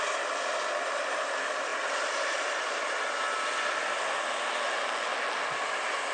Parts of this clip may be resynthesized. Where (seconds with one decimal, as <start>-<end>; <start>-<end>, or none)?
none